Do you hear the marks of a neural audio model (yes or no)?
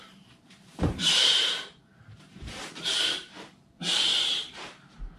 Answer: yes